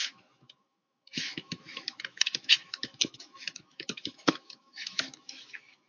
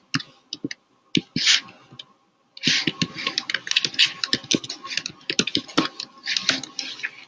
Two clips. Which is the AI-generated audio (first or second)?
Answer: first